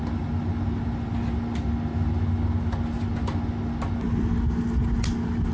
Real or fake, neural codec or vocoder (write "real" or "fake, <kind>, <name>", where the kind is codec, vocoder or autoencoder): real